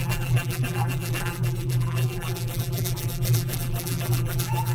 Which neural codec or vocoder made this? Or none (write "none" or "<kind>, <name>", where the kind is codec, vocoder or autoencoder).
vocoder, BigVGAN v2